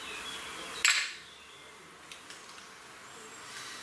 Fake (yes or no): no